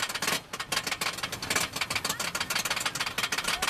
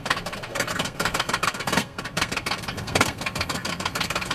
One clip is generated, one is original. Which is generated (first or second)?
second